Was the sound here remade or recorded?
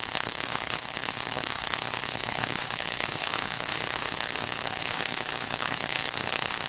remade